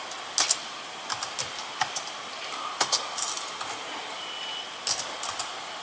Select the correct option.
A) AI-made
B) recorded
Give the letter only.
B